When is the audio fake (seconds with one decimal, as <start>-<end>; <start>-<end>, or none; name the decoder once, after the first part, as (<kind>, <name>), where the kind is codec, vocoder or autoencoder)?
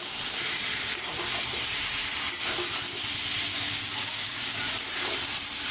3.5-4.7 (codec, DAC)